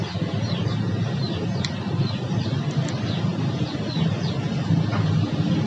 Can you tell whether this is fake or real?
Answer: real